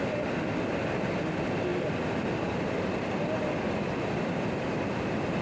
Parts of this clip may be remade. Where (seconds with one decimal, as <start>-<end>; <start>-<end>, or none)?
none